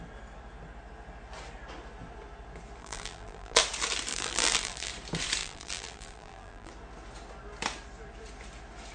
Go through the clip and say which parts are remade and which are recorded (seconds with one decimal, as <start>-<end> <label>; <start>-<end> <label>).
0.0-2.8 recorded; 2.8-3.6 remade; 3.6-4.1 recorded; 4.1-4.9 remade; 4.9-5.4 recorded; 5.4-6.7 remade; 6.7-8.9 recorded